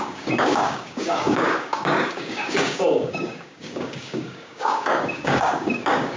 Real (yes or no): no